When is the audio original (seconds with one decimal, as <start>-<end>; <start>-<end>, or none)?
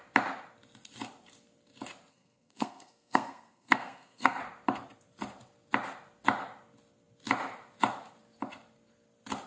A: 0.0-2.1; 4.4-9.5